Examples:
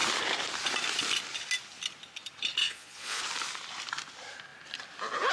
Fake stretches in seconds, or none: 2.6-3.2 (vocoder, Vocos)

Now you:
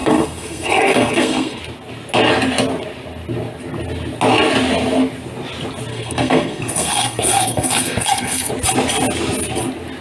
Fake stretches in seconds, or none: 0.0-1.6 (codec, SNAC); 5.9-8.5

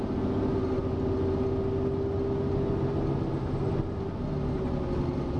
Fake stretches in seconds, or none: none

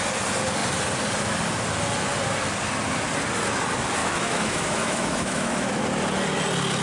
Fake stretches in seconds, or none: 4.0-5.8 (autoencoder, DAC-VAE)

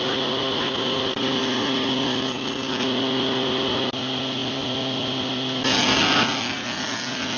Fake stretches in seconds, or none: 4.4-5.3 (vocoder, BigVGAN v2)